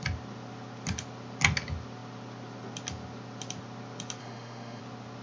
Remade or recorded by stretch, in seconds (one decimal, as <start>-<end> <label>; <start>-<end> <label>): 0.0-4.2 recorded; 4.2-4.8 remade; 4.8-5.2 recorded